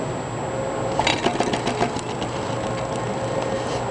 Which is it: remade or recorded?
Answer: recorded